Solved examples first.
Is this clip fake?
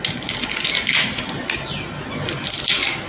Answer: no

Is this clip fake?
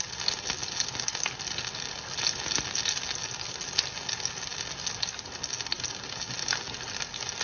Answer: no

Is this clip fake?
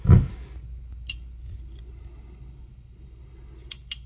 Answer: no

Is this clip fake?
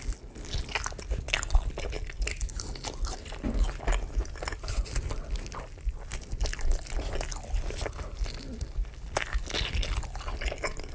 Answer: no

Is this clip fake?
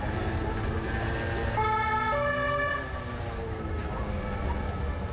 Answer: no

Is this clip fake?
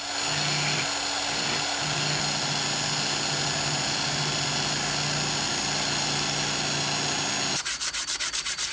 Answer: no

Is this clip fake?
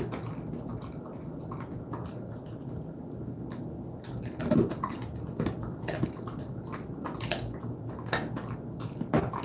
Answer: no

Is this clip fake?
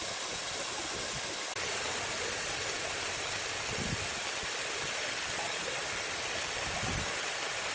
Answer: no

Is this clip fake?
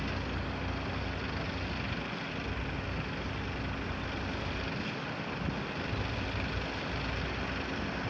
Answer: no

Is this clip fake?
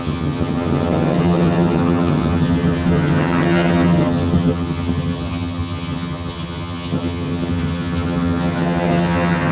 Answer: yes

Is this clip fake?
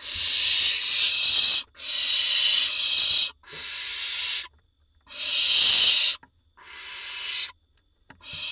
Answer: no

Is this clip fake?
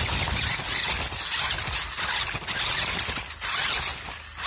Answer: no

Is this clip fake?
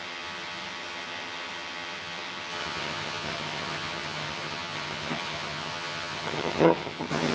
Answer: yes